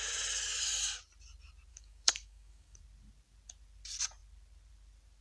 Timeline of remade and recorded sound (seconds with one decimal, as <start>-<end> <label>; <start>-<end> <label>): 0.0-1.7 recorded; 1.7-2.8 remade; 2.8-5.2 recorded